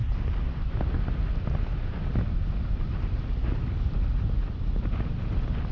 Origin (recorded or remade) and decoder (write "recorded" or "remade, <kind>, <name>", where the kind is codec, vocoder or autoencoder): recorded